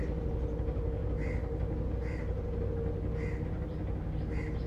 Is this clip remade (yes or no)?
no